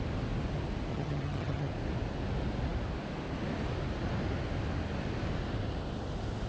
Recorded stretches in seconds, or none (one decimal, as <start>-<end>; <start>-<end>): 0.0-0.9; 1.7-6.5